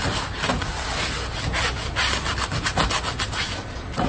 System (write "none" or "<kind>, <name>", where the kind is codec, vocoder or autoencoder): none